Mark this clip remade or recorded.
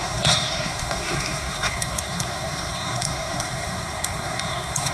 remade